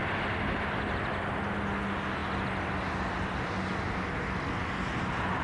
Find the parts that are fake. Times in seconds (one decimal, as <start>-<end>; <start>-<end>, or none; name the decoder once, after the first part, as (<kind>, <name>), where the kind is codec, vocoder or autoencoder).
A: none